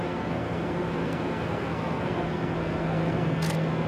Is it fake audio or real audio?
fake